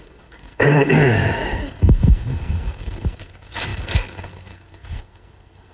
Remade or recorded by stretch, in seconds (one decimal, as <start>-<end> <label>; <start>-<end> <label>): 0.0-5.7 remade